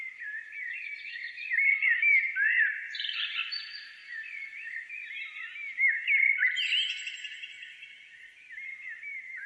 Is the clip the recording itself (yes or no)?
no